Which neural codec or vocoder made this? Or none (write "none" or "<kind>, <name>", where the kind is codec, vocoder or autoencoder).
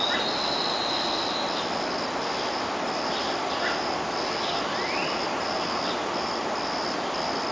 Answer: none